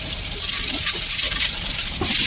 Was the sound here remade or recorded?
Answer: remade